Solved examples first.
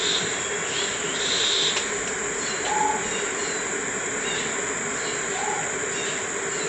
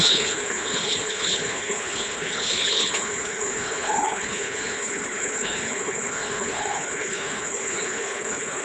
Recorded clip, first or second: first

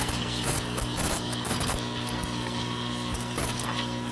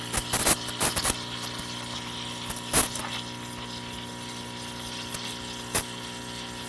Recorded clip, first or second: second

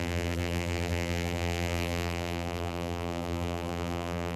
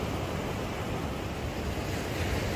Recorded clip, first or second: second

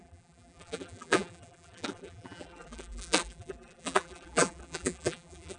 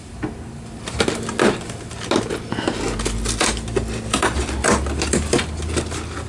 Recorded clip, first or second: second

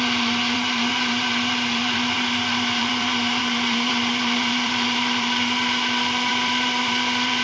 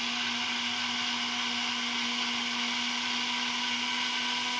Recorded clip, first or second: second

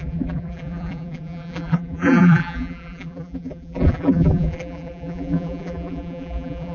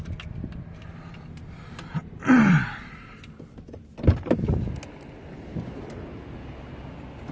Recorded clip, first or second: second